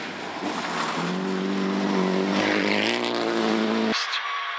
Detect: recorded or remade recorded